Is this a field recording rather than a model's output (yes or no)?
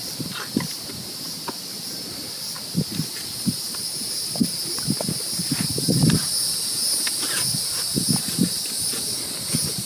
yes